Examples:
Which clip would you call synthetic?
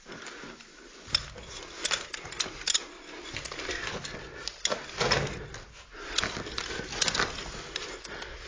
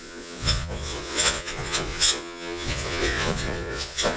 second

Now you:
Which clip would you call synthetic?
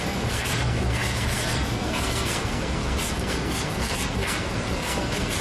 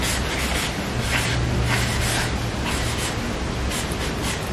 first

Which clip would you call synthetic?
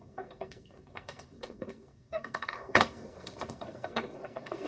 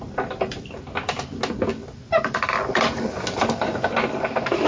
first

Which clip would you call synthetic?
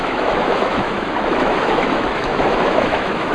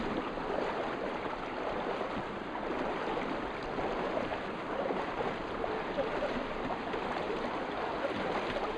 first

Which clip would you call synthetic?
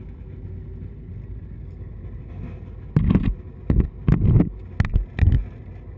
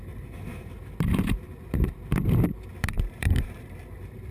second